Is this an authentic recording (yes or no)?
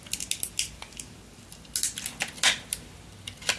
yes